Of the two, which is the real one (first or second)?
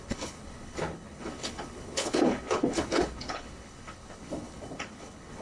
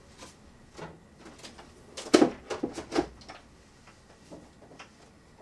second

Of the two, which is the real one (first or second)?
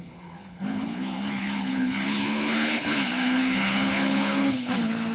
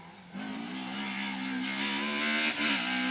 second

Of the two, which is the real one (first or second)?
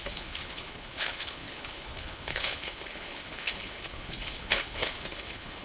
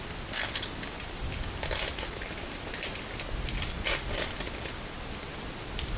second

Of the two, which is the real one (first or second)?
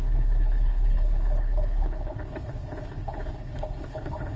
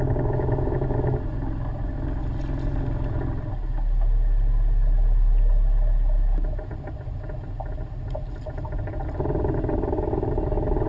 second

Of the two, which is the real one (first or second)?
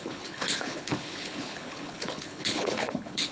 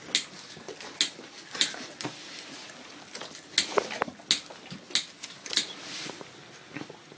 second